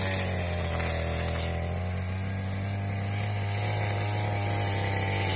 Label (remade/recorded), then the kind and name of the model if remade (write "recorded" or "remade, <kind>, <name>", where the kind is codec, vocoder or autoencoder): recorded